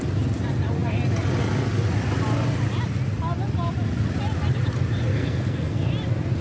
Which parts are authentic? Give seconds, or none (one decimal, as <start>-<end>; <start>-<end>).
0.0-5.1; 5.9-6.4